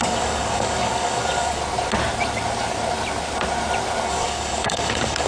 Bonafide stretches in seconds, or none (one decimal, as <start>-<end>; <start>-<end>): 1.6-4.1